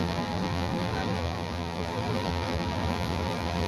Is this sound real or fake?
fake